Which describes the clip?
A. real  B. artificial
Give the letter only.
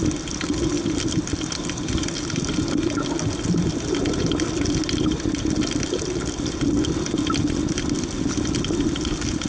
A